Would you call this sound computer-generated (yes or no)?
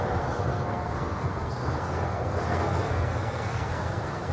yes